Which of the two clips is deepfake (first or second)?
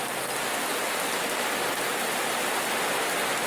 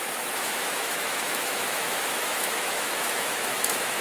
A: second